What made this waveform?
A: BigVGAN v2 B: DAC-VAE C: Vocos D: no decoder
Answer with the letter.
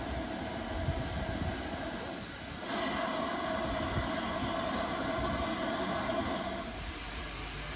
D